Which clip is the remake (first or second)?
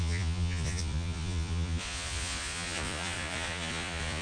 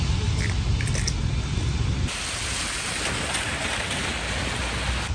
first